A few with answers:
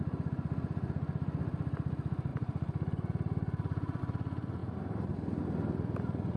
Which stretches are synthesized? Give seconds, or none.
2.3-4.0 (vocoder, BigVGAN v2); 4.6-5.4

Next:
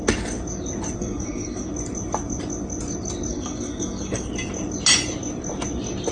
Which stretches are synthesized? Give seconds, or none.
1.0-1.7 (codec, SNAC); 3.3-4.3

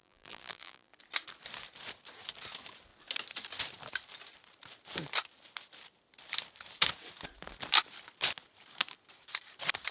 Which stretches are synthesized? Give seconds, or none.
0.0-0.9 (vocoder, BigVGAN v2)

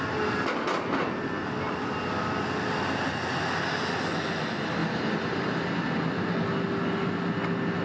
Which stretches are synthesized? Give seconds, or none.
none